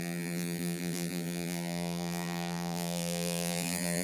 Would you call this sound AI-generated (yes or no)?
yes